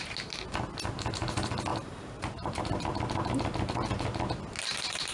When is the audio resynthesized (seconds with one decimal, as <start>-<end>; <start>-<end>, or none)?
1.7-2.6